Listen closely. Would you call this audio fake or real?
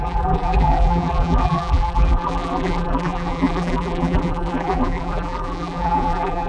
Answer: fake